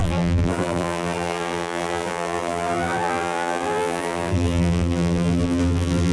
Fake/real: fake